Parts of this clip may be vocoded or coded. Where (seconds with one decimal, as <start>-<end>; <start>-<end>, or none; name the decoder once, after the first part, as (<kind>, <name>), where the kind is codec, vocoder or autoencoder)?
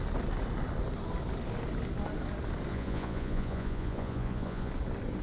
2.7-4.7 (vocoder, Vocos)